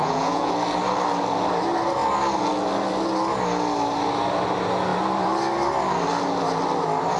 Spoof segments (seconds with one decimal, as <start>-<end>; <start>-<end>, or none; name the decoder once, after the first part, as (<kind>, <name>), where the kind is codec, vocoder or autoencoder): 0.0-0.5 (vocoder, Vocos)